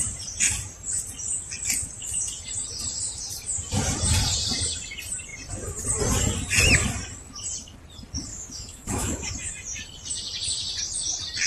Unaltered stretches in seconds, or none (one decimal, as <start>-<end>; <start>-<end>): 0.0-8.3; 9.3-11.5